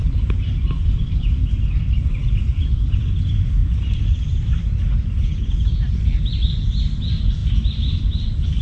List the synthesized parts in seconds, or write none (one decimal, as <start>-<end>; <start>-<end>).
3.6-4.6